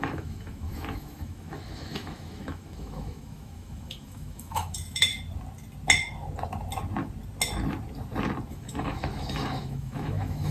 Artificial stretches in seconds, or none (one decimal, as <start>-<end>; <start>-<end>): 0.0-5.1; 8.5-10.5